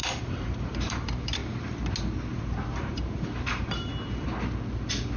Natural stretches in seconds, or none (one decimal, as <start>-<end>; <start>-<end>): 1.4-2.4; 3.9-5.2